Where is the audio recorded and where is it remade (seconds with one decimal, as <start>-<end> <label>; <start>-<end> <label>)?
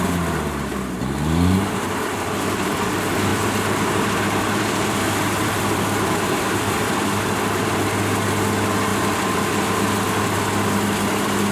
0.0-3.3 recorded; 3.3-7.3 remade; 7.3-8.9 recorded; 8.9-9.7 remade; 9.7-11.5 recorded